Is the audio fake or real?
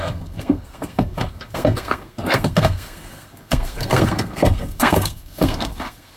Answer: fake